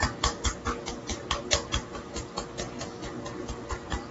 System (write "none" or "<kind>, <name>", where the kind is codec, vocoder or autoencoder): none